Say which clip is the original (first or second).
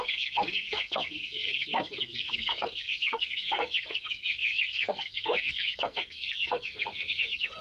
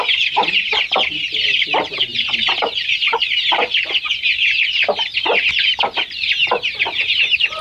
second